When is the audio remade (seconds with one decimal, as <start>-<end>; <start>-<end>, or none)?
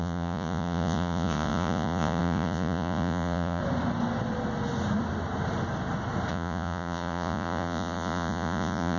0.0-3.6; 6.3-9.0